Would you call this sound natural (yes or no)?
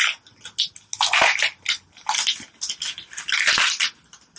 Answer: yes